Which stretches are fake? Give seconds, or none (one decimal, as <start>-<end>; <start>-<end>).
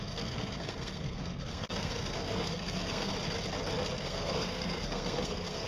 0.0-3.1; 4.0-5.7